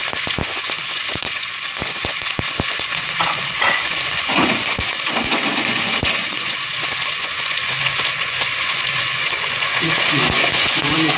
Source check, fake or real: fake